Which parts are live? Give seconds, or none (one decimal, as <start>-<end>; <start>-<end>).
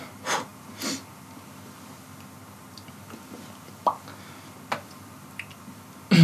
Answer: 0.0-6.2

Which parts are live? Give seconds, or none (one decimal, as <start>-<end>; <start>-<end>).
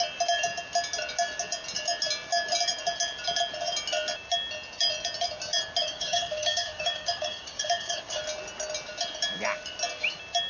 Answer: 0.0-5.8; 8.2-10.5